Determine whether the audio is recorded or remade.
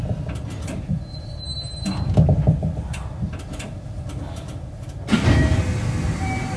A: recorded